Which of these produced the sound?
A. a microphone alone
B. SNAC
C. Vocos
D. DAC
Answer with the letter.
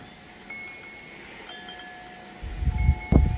A